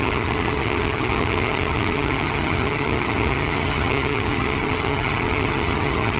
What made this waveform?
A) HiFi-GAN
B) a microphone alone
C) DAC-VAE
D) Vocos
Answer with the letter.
A